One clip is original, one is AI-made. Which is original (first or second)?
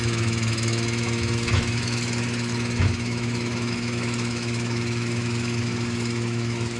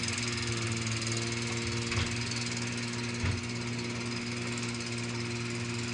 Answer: second